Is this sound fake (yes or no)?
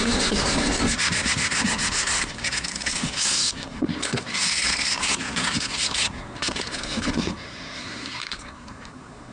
yes